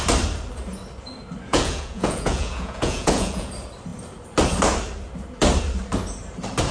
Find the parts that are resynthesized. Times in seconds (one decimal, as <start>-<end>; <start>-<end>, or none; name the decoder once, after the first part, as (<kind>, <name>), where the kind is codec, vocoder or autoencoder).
1.5-3.5 (vocoder, Vocos)